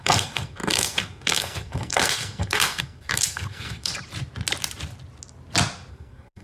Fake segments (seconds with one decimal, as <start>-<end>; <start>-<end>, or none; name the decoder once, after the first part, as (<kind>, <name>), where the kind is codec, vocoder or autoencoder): 0.0-3.9 (codec, SNAC); 5.9-6.4